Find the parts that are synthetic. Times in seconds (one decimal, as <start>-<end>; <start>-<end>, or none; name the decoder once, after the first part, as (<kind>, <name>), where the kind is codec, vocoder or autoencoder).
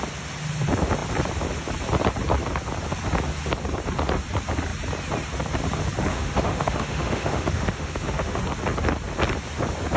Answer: 6.1-8.4 (autoencoder, DAC-VAE)